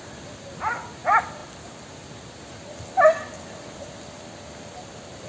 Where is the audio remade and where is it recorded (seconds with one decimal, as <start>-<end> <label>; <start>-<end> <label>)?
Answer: 0.0-5.3 recorded